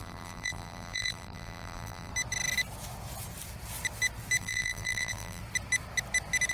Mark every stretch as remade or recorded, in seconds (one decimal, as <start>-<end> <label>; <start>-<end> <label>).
0.0-2.1 remade; 2.1-4.4 recorded; 4.4-5.4 remade; 5.4-6.5 recorded